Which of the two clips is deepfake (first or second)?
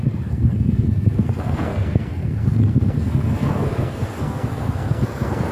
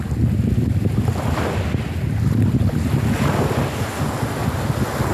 first